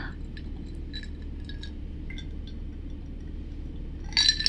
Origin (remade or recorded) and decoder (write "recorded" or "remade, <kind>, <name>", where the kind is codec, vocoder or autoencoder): recorded